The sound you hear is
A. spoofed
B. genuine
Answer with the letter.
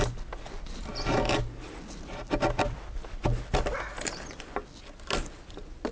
B